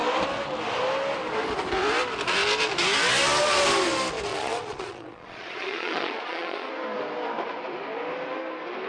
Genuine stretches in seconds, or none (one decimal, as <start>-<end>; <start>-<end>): 0.0-4.3; 6.7-8.9